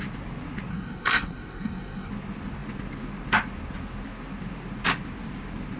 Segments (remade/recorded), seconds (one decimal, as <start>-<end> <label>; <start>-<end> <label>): 0.0-0.7 recorded; 0.7-2.1 remade; 2.1-5.8 recorded